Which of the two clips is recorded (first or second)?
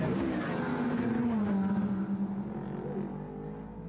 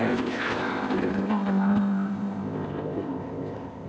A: first